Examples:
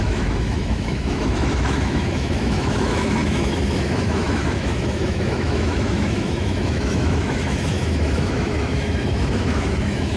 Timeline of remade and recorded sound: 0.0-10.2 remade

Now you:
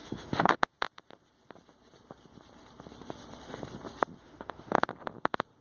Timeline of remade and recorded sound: 0.0-0.7 remade; 0.7-4.2 recorded; 4.2-4.9 remade; 4.9-5.6 recorded

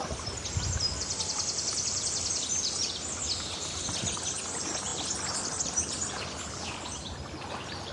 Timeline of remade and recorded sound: 0.0-7.9 recorded

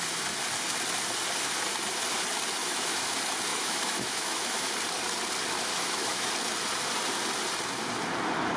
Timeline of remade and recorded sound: 0.0-2.6 recorded; 2.6-3.1 remade; 3.1-3.5 recorded; 3.5-4.7 remade; 4.7-5.7 recorded; 5.7-6.3 remade; 6.3-8.6 recorded

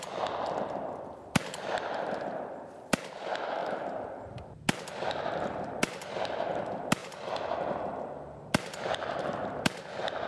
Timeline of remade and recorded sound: 0.0-10.3 recorded

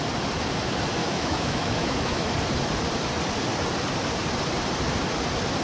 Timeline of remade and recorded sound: 0.0-1.0 recorded; 1.0-2.3 remade; 2.3-5.6 recorded

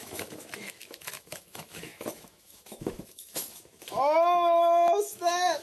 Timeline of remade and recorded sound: 0.0-5.6 remade

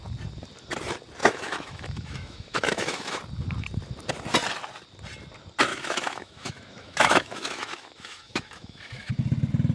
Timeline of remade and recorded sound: 0.0-1.2 recorded; 1.2-3.2 remade; 3.2-5.7 recorded; 5.7-9.1 remade; 9.1-9.7 recorded